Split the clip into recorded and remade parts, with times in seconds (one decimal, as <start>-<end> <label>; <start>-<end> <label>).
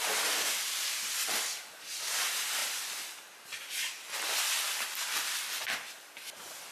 0.0-6.7 recorded